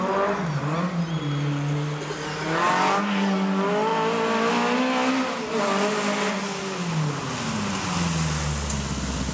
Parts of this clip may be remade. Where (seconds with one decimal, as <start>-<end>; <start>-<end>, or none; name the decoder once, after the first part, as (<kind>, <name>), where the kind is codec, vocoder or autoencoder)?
none